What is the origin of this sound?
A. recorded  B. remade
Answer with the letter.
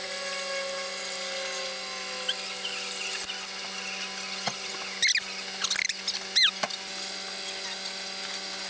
A